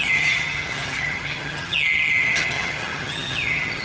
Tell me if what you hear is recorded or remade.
remade